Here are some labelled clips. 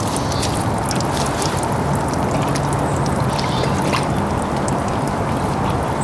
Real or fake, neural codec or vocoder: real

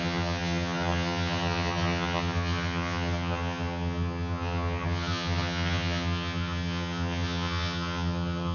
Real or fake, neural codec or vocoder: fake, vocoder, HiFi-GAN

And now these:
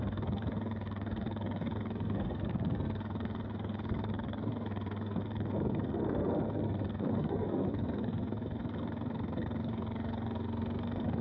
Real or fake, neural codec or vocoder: fake, codec, SNAC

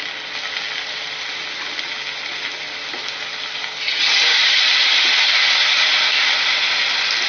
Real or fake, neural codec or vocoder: real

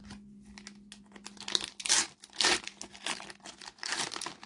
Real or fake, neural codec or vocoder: real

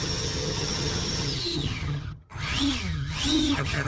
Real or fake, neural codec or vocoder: fake, vocoder, HiFi-GAN